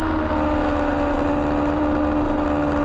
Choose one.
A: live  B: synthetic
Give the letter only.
A